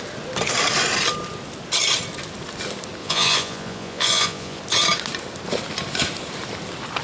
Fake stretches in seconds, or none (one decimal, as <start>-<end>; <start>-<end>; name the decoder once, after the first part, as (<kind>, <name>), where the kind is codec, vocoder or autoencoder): 3.0-4.6 (vocoder, Vocos)